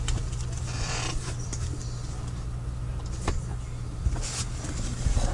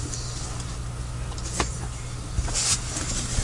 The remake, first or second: first